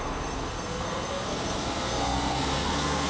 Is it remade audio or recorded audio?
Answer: remade